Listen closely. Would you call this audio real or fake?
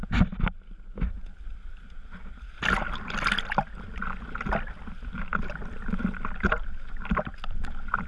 real